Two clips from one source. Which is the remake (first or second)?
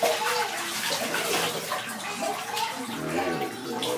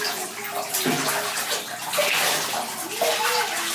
first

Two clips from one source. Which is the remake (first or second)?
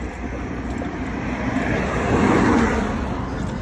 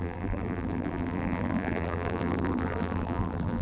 second